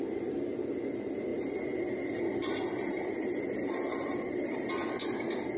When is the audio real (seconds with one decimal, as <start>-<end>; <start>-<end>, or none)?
0.0-1.3; 4.7-5.6